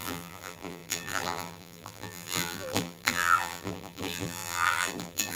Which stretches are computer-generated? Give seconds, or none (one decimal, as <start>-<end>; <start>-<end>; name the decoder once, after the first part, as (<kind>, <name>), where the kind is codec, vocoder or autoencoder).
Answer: 0.0-5.4 (vocoder, BigVGAN v2)